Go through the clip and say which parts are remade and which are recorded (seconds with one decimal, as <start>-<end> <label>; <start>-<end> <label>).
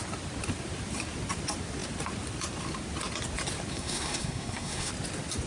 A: 0.0-3.7 recorded; 3.7-4.9 remade; 4.9-5.5 recorded